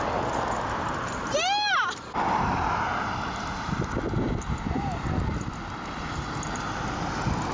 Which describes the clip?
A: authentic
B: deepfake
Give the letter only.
A